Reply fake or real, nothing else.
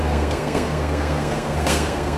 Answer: fake